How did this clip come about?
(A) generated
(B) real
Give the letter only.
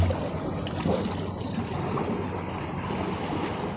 B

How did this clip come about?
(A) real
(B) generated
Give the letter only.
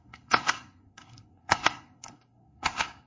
B